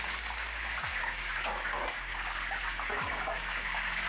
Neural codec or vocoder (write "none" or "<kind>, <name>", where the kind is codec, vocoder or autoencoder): codec, DAC